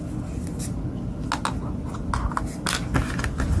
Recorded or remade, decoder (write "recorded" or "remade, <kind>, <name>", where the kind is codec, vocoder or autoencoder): recorded